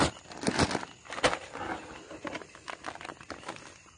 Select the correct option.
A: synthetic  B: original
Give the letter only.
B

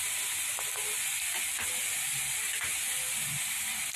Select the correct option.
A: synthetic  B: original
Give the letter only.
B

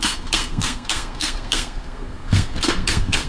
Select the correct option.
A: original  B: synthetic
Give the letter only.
B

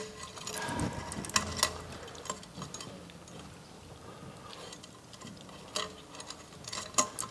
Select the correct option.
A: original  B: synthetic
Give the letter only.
A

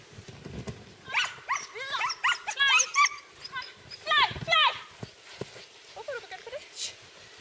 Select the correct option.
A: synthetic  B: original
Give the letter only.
B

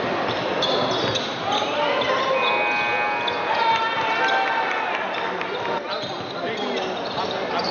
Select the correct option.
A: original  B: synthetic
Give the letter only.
A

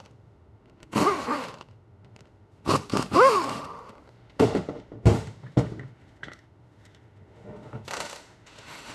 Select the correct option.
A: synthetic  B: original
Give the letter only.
A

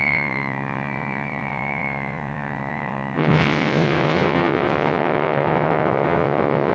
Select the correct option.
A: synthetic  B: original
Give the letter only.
A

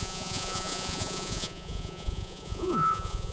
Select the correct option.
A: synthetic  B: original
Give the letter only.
A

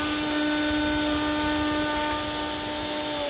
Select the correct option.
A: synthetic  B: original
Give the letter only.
B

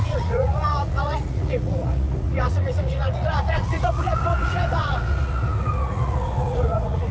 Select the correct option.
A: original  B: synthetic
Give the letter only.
B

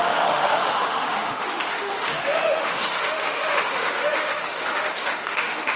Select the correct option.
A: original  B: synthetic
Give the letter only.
B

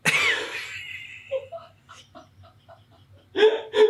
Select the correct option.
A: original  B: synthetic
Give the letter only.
A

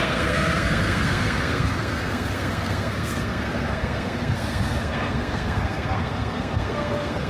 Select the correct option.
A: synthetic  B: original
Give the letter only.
A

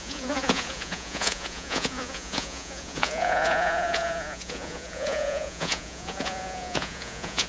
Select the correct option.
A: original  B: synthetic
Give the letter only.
B